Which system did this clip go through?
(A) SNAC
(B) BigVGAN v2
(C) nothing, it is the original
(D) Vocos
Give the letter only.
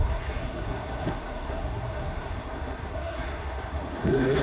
A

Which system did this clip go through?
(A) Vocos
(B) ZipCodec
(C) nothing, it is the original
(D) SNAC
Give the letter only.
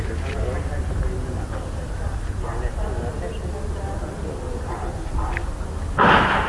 C